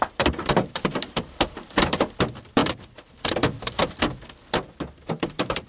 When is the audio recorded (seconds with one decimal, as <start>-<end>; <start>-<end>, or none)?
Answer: 3.8-5.2